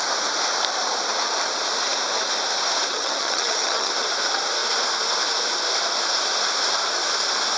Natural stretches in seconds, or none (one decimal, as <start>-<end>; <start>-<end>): 0.0-2.9; 3.9-7.6